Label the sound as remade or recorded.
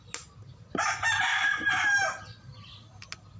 recorded